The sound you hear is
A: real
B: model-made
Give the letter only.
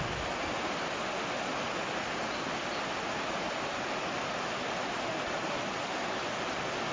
A